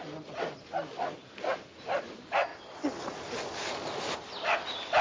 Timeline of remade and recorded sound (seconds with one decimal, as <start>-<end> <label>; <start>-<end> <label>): 0.0-5.0 recorded